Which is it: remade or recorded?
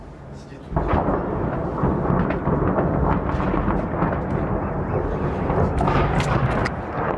recorded